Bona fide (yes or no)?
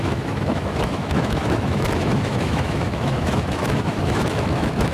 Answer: no